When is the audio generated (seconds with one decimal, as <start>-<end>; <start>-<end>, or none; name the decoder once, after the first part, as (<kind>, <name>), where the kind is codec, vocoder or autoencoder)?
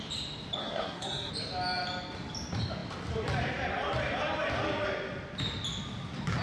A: 0.6-1.3 (codec, SNAC)